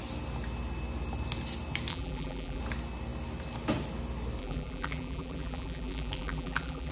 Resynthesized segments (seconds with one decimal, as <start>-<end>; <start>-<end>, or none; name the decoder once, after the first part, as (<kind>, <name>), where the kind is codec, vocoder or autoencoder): 1.9-2.6 (vocoder, BigVGAN v2); 4.4-6.9